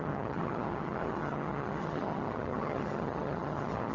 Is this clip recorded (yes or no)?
no